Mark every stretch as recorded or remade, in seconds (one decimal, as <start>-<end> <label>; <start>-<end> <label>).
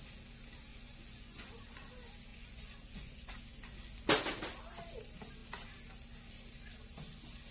0.0-0.7 recorded; 0.7-1.5 remade; 1.5-2.3 recorded; 2.3-3.3 remade; 3.3-7.5 recorded